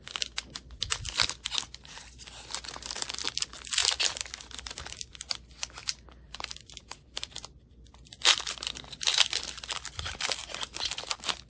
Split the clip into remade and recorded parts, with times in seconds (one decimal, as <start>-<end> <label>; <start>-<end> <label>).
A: 0.0-5.8 recorded; 5.8-7.7 remade; 7.7-10.4 recorded; 10.4-11.1 remade; 11.1-11.5 recorded